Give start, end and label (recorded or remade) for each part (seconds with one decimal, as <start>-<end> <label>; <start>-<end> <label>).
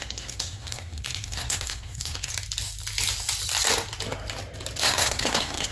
0.0-2.3 remade; 2.3-4.8 recorded; 4.8-5.7 remade